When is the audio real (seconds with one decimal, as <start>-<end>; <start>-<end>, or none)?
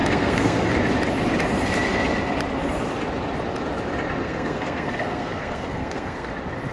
0.7-4.2; 6.3-6.7